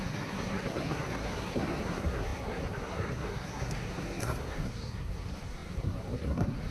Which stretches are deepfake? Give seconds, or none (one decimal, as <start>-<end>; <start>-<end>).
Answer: 0.0-6.7